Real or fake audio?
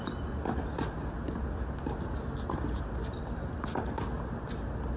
real